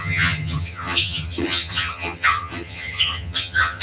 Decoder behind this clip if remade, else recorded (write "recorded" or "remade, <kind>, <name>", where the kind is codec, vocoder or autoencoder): remade, vocoder, HiFi-GAN